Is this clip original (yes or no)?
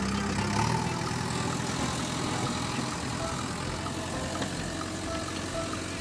yes